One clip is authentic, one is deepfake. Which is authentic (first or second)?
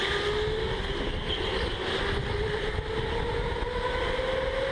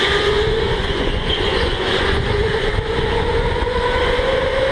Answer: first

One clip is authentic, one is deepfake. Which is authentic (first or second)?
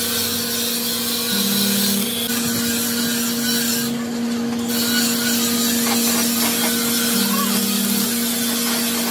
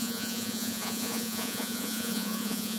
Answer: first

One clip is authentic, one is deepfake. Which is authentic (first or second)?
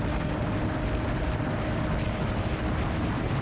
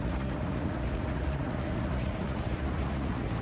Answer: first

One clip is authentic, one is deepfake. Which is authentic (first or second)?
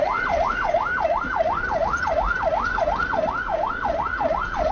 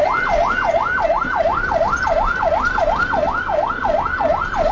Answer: second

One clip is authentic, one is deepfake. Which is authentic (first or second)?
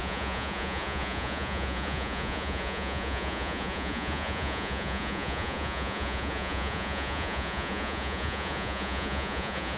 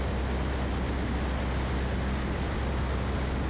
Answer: second